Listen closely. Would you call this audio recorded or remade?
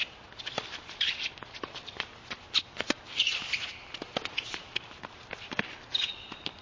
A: recorded